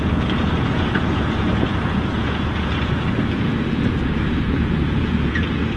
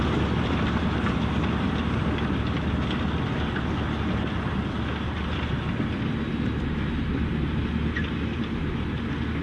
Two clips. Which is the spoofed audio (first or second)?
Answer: first